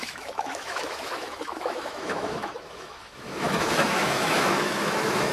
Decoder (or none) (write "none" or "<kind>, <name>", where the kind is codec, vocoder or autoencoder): autoencoder, DAC-VAE